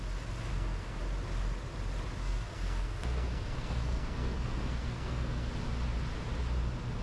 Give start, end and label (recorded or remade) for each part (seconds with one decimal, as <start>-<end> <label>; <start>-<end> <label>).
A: 0.0-0.5 recorded; 0.5-1.0 remade; 1.0-2.2 recorded; 2.2-5.5 remade; 5.5-7.0 recorded